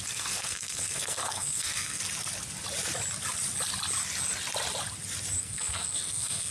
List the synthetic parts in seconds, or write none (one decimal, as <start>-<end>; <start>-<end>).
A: 0.0-2.0; 5.4-6.5